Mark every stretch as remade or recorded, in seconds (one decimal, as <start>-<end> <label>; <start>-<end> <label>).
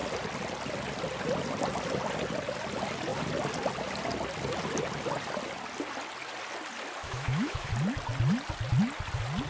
0.0-7.0 recorded; 7.0-7.7 remade; 7.7-9.5 recorded